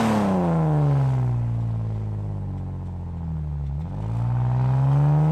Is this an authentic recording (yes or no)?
yes